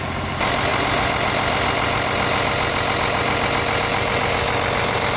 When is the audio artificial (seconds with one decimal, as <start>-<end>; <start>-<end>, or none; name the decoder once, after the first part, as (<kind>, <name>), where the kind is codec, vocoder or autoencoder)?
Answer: none